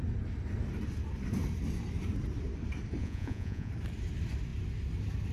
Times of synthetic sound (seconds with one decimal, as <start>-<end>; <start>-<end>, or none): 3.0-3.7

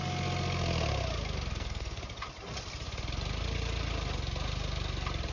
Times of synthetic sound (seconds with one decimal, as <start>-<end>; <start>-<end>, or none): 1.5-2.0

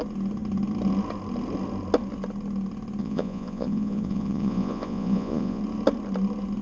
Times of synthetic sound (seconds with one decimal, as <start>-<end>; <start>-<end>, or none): 3.0-5.6

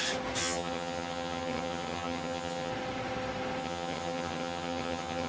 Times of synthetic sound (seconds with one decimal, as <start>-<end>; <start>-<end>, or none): 0.4-2.7; 3.6-5.3

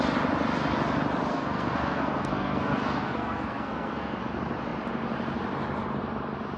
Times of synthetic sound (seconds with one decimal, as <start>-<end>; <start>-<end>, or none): 1.3-4.2